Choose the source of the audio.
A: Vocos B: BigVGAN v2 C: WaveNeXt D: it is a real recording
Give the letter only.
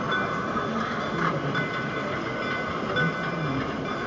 D